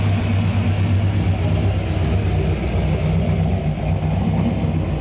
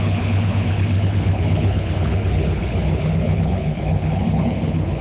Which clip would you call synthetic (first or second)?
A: second